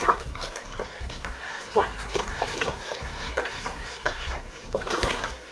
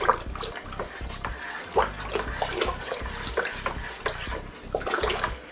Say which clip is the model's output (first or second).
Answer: first